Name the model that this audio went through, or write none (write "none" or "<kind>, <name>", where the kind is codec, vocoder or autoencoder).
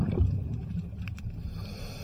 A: none